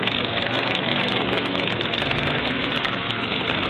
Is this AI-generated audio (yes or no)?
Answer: yes